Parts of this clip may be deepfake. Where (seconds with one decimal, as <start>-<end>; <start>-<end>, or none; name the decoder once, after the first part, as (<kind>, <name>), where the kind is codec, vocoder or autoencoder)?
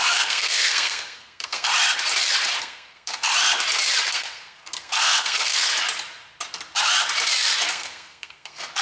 0.0-1.7 (codec, SNAC); 2.6-3.3; 4.1-5.7; 7.7-8.8